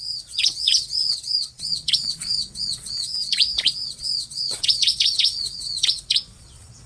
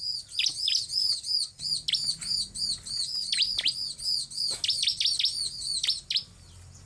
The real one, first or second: second